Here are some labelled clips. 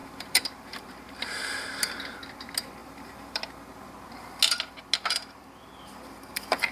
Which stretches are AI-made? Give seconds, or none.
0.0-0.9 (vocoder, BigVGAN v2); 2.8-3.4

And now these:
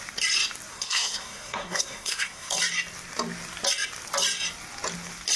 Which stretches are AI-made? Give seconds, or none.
0.7-2.5 (codec, SNAC)